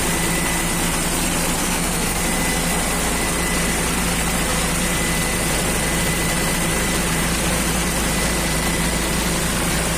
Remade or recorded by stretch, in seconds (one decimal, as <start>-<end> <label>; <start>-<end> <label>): 0.0-1.6 recorded; 1.6-2.2 remade; 2.2-10.0 recorded